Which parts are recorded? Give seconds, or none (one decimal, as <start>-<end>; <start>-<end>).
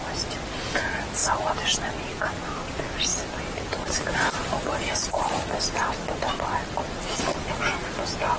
0.0-3.1; 7.5-8.4